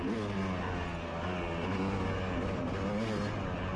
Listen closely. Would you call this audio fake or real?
real